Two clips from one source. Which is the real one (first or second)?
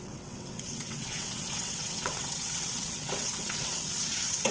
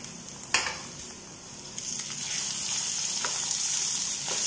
second